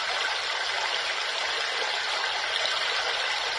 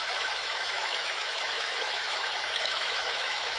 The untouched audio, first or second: first